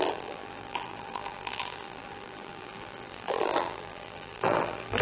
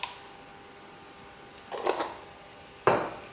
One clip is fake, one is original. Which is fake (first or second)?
first